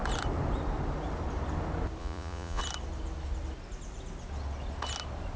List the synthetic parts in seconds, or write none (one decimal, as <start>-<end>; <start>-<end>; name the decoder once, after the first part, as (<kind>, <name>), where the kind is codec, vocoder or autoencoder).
2.0-2.6 (vocoder, Vocos)